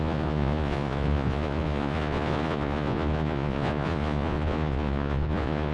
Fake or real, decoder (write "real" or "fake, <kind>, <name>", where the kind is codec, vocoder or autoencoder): fake, vocoder, Vocos